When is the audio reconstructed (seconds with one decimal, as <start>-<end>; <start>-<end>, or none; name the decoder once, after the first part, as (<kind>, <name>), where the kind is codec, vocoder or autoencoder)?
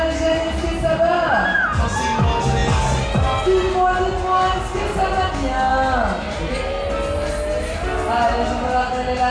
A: none